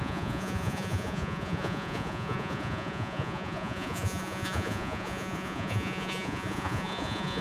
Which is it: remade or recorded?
remade